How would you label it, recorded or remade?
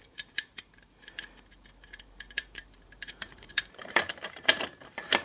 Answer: remade